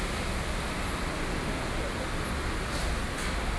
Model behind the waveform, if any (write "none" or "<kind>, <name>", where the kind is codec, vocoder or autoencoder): none